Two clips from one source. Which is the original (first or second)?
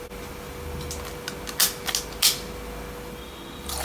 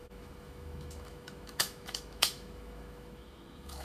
first